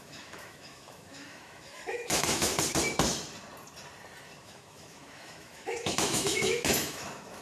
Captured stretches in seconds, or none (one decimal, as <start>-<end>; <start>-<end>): 2.5-4.4

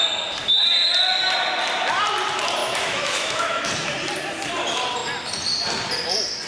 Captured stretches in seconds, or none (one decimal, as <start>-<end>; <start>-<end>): 0.0-2.6; 3.7-6.5

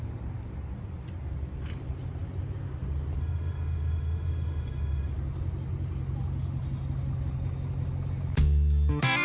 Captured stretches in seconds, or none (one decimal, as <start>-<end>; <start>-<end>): 0.0-3.2; 5.1-9.2

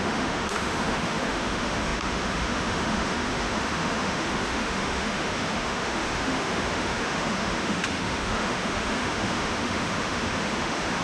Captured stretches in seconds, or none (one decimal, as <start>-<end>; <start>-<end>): none

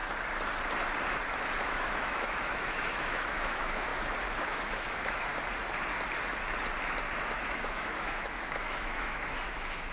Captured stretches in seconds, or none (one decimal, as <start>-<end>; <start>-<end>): 0.0-1.6; 3.9-4.4; 5.3-7.4